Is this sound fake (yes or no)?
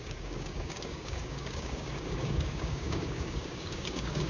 yes